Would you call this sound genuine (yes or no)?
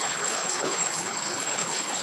no